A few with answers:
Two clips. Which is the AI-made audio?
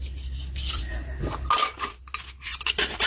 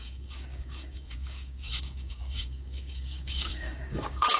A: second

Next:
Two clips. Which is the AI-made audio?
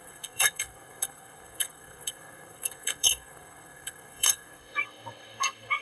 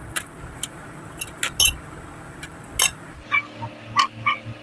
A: first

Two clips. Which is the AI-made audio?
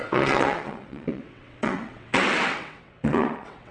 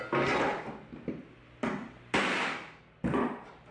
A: first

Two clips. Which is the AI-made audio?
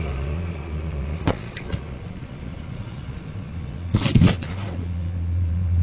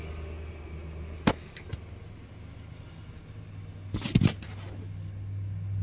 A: first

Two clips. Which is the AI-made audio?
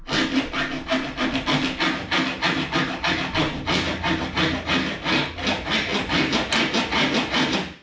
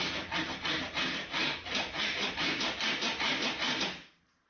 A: second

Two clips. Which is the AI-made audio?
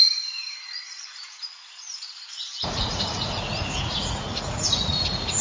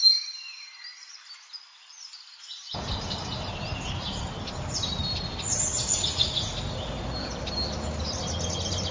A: first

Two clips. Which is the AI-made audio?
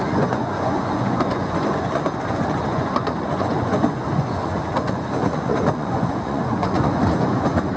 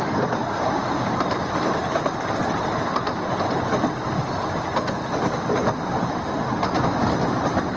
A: first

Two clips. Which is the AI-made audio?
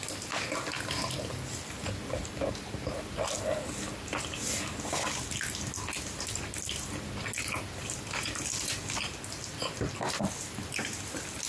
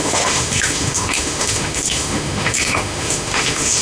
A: second